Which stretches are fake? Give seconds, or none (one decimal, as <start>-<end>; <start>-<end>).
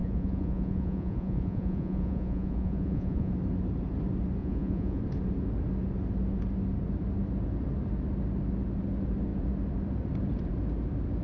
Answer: 0.0-3.3; 4.4-5.0